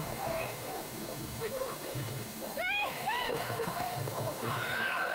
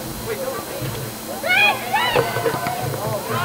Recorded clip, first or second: second